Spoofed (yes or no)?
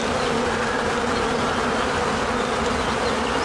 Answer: no